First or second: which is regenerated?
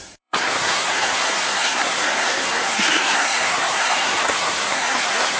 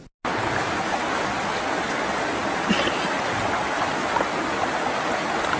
first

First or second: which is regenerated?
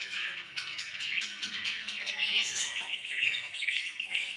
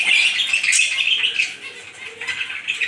first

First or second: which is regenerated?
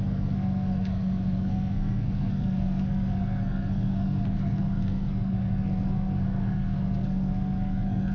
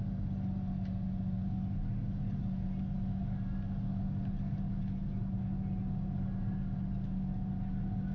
first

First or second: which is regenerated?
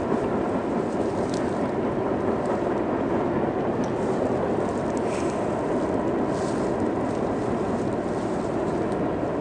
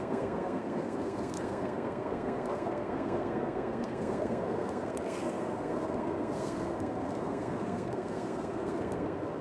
second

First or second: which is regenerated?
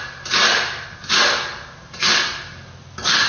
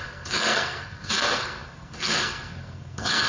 second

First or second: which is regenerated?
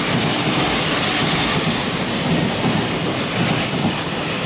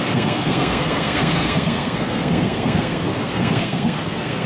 second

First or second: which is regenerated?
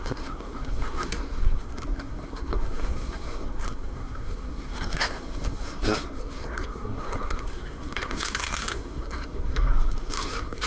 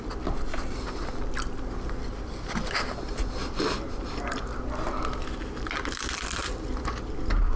first